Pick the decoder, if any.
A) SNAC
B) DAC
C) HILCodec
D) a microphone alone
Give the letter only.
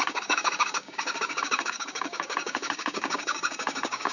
B